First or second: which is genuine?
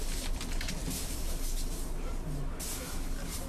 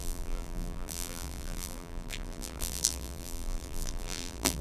first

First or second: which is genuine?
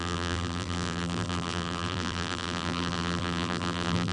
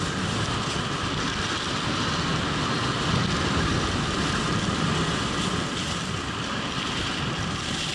second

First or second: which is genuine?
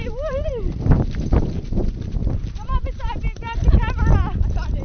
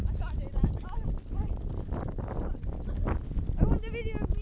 second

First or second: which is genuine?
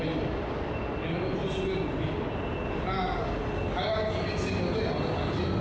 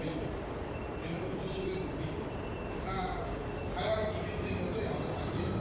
first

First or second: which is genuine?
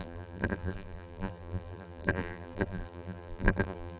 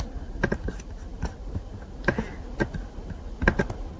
second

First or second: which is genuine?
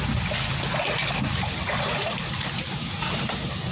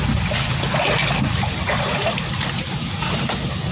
first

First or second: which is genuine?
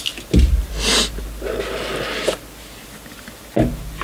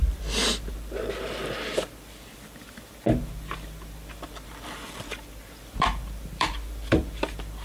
first